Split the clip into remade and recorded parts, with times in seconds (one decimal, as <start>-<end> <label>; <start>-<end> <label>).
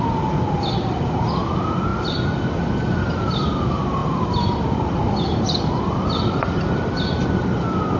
0.0-8.0 recorded